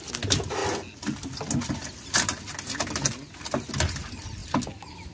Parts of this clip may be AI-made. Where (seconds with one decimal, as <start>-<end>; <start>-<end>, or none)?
none